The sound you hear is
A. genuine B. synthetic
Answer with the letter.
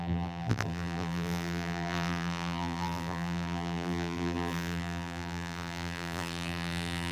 B